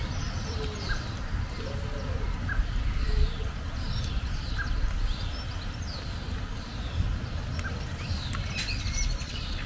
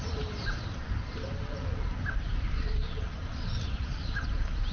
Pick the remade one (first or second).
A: second